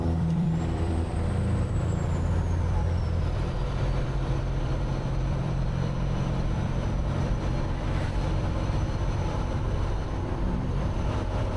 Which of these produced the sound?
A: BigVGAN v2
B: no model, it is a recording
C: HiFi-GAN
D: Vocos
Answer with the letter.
A